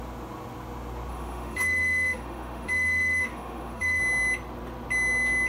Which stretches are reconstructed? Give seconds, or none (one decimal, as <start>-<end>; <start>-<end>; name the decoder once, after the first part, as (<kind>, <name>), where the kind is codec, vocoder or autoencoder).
1.1-4.0 (autoencoder, DAC-VAE)

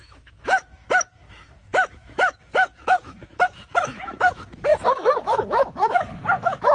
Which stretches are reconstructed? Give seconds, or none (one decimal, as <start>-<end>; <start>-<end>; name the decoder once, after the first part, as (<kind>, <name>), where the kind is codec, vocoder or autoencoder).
0.0-6.7 (autoencoder, DAC-VAE)